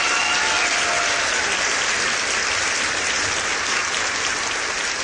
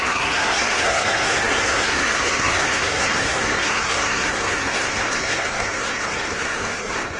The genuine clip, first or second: first